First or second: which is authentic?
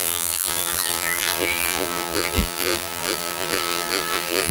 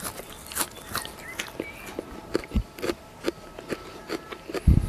second